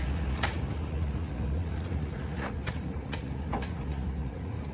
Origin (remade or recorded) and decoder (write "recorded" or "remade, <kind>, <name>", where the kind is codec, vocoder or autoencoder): remade, vocoder, Vocos